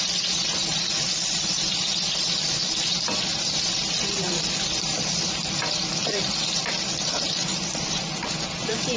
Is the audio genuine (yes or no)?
no